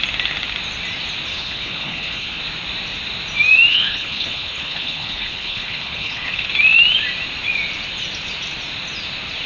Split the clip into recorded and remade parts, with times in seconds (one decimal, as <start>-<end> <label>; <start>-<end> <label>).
0.0-1.3 recorded; 1.3-2.4 remade; 2.4-3.7 recorded; 3.7-6.5 remade; 6.5-9.5 recorded

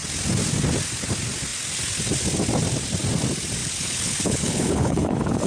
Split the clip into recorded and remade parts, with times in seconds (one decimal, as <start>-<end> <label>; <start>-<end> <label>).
0.0-3.6 recorded; 3.6-5.5 remade

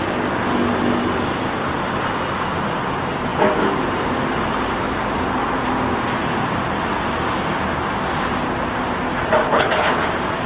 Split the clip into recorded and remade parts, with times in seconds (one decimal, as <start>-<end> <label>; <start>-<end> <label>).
0.0-9.4 recorded; 9.4-10.1 remade; 10.1-10.5 recorded

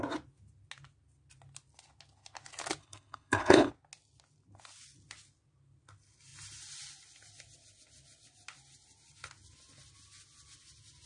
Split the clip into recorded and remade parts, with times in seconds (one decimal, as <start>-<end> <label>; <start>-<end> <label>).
0.0-2.8 recorded; 2.8-3.7 remade; 3.7-11.1 recorded